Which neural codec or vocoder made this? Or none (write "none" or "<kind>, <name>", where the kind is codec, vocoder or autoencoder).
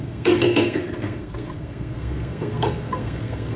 codec, SNAC